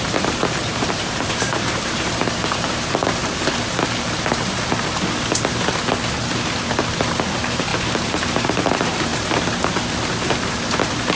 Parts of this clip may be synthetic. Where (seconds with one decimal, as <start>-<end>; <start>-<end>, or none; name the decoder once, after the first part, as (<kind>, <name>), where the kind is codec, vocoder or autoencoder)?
0.0-3.2 (vocoder, BigVGAN v2); 6.8-9.1